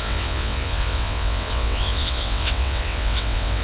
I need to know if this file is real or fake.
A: fake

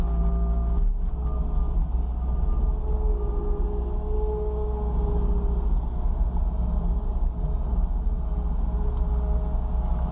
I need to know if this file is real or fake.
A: real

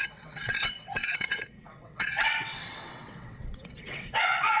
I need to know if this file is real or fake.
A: fake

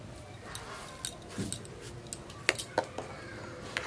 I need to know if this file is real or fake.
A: real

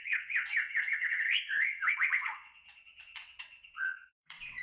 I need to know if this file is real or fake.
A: fake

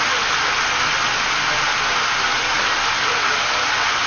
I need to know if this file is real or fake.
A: real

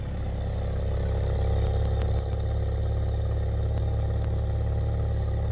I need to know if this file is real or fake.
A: real